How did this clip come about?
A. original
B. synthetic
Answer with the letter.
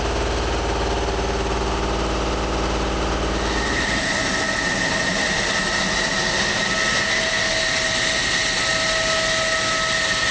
A